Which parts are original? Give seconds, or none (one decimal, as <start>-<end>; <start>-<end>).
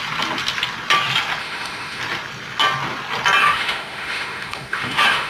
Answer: 0.0-1.4; 2.0-3.4